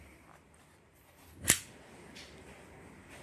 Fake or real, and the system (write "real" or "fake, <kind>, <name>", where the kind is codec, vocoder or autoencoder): fake, vocoder, BigVGAN v2